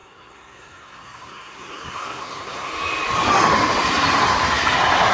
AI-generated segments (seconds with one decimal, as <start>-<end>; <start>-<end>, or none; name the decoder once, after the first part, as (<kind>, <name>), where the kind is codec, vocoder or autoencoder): 0.0-2.7 (codec, SNAC)